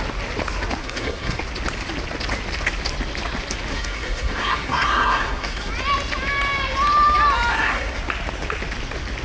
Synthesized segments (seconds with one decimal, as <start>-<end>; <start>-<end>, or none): 0.8-1.4; 3.7-5.7; 7.5-8.0